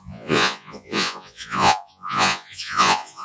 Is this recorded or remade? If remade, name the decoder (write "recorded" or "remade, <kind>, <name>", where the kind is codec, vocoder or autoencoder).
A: remade, vocoder, Vocos